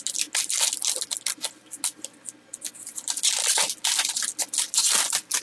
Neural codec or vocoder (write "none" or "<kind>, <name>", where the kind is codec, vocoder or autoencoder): none